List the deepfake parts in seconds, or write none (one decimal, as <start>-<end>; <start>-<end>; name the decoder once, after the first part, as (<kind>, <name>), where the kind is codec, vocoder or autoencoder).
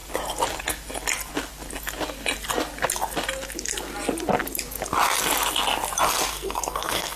6.3-7.2 (codec, SNAC)